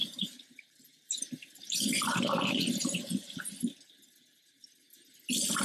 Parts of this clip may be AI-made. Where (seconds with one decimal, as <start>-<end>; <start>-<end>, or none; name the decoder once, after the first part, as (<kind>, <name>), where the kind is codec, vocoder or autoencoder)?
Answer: 0.0-3.4 (vocoder, BigVGAN v2)